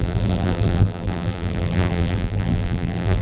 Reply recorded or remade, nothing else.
remade